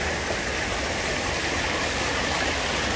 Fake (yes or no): no